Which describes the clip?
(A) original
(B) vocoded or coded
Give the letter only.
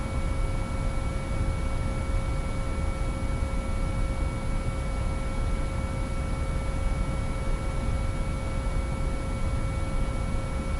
A